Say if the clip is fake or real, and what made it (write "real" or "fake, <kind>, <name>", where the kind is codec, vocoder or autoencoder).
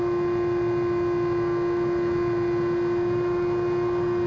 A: real